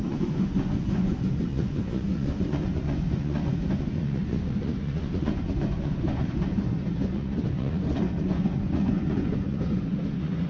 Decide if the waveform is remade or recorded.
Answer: remade